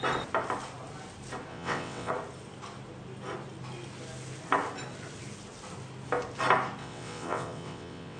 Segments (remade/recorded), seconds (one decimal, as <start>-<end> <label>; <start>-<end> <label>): 0.0-1.5 recorded; 1.5-2.1 remade; 2.1-6.8 recorded; 6.8-8.2 remade